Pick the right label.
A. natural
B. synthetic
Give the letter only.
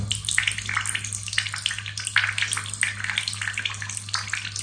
A